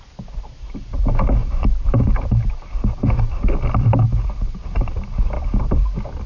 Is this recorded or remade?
recorded